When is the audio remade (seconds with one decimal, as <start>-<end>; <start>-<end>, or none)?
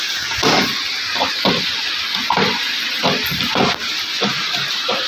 0.7-3.6